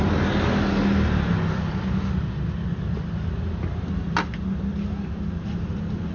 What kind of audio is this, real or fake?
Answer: real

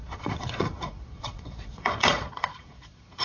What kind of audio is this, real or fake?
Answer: fake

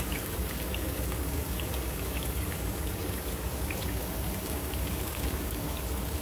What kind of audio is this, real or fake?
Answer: fake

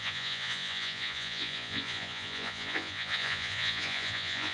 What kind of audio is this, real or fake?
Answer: fake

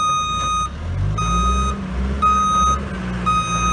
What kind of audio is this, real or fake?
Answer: real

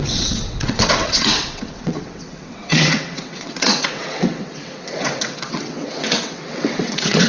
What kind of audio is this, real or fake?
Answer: fake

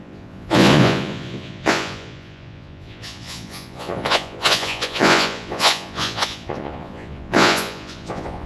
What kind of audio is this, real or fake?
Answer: fake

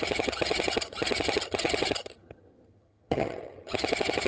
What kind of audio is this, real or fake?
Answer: fake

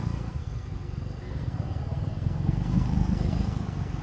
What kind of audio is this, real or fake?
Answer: fake